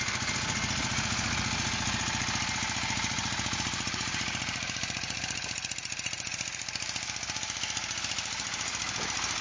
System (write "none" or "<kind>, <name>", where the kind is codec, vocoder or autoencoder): none